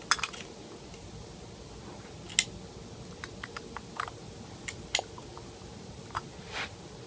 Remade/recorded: recorded